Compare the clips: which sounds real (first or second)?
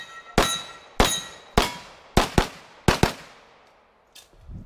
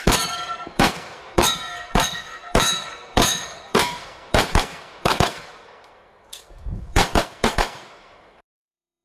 first